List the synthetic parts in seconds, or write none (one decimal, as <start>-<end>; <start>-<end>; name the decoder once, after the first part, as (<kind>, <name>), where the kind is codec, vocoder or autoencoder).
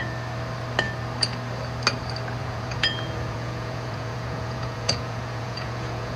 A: 2.4-6.2 (vocoder, Vocos)